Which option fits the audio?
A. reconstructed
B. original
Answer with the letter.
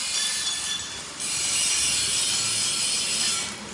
A